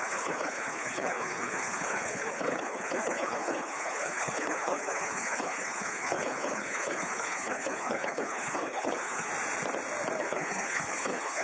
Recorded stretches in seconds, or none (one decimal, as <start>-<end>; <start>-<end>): 9.3-10.2